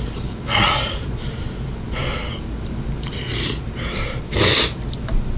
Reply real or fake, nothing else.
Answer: real